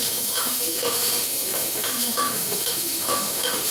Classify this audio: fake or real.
fake